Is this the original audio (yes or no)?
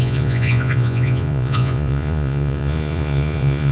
no